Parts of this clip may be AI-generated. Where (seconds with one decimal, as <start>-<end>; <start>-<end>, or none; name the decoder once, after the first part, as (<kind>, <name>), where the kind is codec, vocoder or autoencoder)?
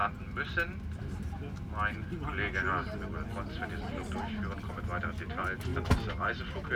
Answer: none